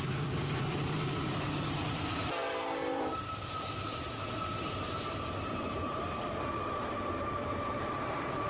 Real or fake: fake